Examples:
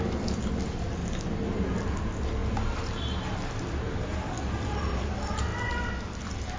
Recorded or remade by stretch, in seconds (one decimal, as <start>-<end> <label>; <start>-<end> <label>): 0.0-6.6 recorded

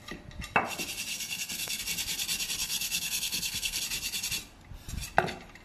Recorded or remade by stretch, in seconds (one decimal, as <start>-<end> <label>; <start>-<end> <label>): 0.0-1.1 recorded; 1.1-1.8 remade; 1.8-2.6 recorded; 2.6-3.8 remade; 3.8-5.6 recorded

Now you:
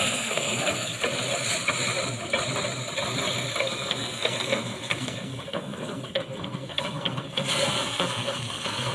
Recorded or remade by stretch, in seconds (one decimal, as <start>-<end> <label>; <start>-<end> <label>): 0.0-0.9 remade; 0.9-3.6 recorded; 3.6-8.9 remade

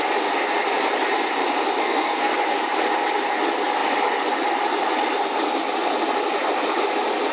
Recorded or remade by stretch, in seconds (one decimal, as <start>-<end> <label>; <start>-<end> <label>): 0.0-1.8 recorded; 1.8-2.3 remade; 2.3-7.3 recorded

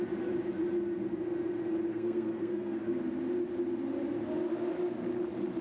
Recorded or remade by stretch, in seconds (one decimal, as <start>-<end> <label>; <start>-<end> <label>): 0.0-1.9 recorded; 1.9-3.0 remade; 3.0-5.6 recorded

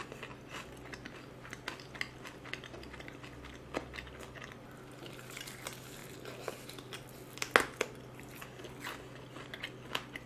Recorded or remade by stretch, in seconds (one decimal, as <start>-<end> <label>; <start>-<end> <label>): 0.0-10.3 recorded

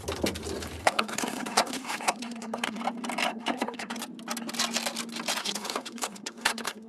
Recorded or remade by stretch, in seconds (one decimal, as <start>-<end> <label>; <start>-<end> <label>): 0.0-0.8 recorded; 0.8-2.8 remade; 2.8-3.3 recorded; 3.3-4.0 remade; 4.0-5.4 recorded; 5.4-6.9 remade

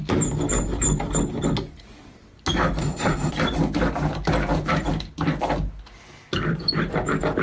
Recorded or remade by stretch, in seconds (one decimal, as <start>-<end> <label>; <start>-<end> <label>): 0.0-2.8 recorded; 2.8-3.3 remade; 3.3-7.4 recorded